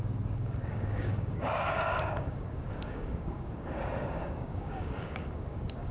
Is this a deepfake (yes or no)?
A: yes